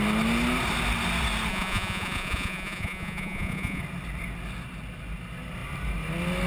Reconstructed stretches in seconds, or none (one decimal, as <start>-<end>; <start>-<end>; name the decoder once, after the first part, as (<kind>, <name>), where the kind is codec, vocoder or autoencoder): 1.5-3.8 (vocoder, Vocos)